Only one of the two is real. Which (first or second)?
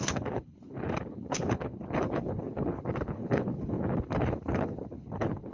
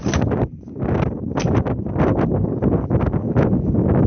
second